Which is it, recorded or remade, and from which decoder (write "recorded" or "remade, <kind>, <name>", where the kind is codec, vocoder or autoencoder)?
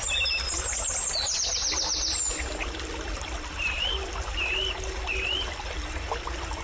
recorded